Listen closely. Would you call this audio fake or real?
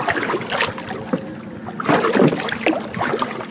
real